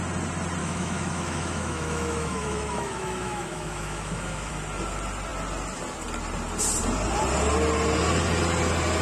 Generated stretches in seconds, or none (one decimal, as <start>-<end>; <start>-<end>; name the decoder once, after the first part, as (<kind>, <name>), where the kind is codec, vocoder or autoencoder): 0.6-4.5 (autoencoder, DAC-VAE)